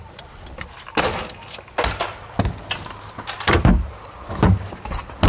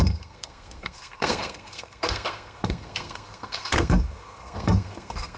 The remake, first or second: second